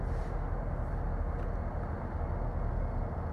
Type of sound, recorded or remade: recorded